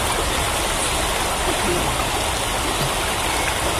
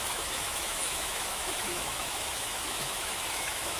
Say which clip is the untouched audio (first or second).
first